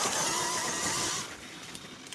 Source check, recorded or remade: recorded